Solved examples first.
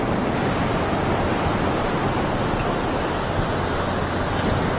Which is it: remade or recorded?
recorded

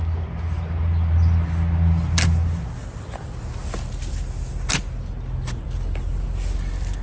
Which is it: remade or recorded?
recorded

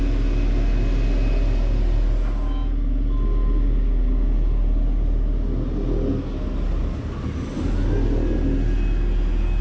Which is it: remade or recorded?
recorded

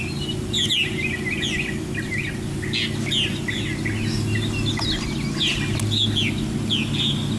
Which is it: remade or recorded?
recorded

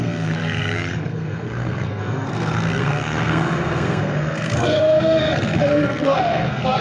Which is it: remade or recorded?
remade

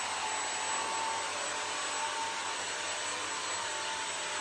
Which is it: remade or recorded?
recorded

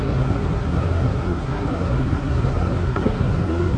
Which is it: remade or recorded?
remade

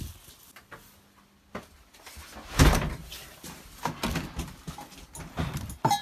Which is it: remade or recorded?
recorded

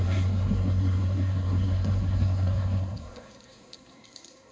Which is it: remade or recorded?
remade